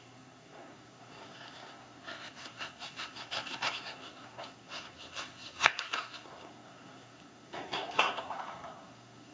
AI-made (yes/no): yes